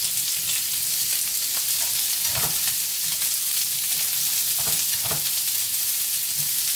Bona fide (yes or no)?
yes